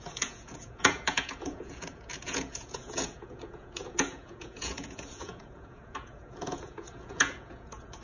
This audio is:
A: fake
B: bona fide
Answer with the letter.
A